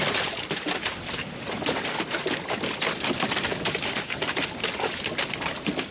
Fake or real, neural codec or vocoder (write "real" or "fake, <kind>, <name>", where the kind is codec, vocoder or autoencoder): real